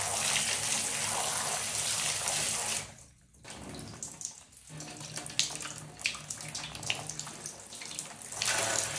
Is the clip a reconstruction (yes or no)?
no